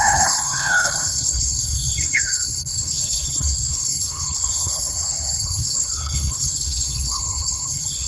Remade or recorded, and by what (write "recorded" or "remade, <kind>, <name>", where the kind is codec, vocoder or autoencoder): remade, codec, HILCodec